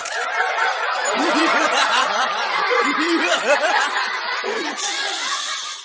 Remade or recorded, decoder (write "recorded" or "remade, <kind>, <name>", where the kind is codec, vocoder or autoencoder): remade, vocoder, Vocos